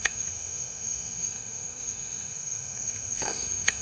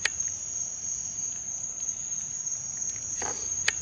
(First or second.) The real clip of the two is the second